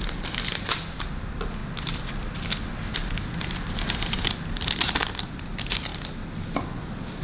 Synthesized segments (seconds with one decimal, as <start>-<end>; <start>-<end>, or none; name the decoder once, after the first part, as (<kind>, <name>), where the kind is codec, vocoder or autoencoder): 0.0-5.9 (vocoder, BigVGAN v2); 6.8-7.2